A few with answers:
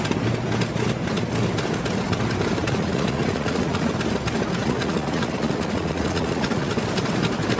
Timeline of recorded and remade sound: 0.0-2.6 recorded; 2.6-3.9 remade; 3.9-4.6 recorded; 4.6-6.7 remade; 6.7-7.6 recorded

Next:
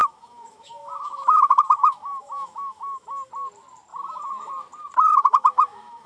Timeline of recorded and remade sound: 0.0-3.3 remade; 3.3-3.9 recorded; 3.9-4.5 remade; 4.5-5.1 recorded; 5.1-6.1 remade

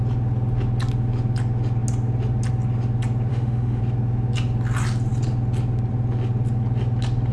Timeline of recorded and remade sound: 0.0-3.3 recorded; 3.3-3.8 remade; 3.8-7.3 recorded

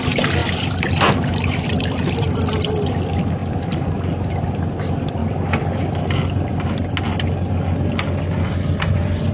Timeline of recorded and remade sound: 0.0-9.3 recorded

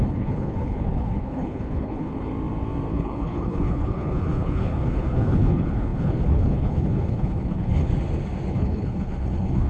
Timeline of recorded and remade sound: 0.0-2.3 remade; 2.3-2.9 recorded; 2.9-7.9 remade; 7.9-8.5 recorded; 8.5-9.7 remade

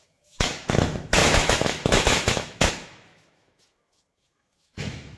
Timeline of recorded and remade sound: 0.0-5.2 remade